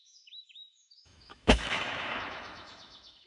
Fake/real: fake